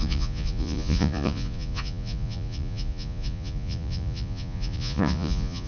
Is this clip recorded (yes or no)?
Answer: no